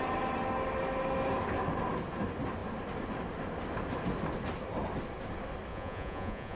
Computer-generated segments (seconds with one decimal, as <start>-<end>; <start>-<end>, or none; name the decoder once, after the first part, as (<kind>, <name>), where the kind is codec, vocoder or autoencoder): 5.7-6.6 (vocoder, Vocos)